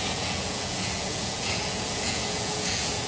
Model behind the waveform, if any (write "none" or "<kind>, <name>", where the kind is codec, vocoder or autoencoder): vocoder, Vocos